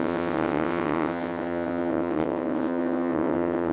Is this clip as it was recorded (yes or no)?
no